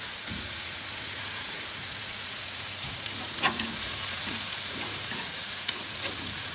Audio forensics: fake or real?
fake